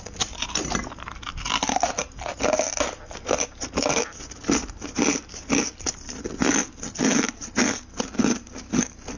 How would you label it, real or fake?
real